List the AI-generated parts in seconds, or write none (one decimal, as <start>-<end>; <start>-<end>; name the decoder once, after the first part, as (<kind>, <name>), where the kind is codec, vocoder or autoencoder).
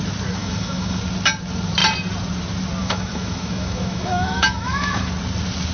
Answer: 0.4-1.0 (autoencoder, DAC-VAE); 2.8-5.1